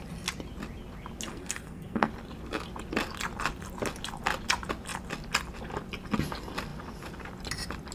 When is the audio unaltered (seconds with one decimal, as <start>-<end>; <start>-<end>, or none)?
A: 0.0-1.3; 2.1-7.9